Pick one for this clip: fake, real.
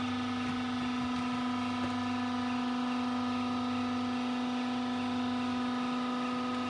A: real